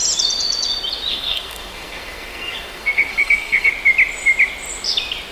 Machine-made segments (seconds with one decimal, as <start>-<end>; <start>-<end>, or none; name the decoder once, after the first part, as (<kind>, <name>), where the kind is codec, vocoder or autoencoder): 1.1-3.7 (codec, SNAC)